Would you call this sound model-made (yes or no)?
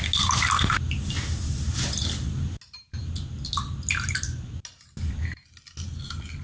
no